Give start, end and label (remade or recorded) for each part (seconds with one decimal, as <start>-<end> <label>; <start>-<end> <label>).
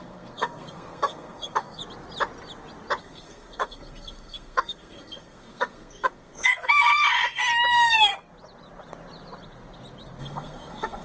0.0-1.8 remade; 1.8-3.0 recorded; 3.0-6.9 remade; 6.9-7.7 recorded; 7.7-8.1 remade; 8.1-10.2 recorded; 10.2-11.0 remade